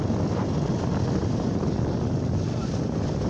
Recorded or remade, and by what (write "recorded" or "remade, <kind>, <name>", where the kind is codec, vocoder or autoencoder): recorded